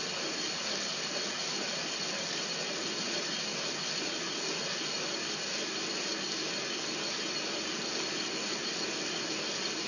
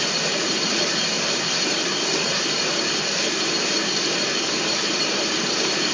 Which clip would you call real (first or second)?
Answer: first